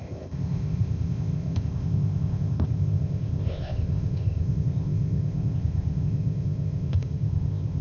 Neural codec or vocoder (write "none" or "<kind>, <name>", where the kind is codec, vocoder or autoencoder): codec, ZipCodec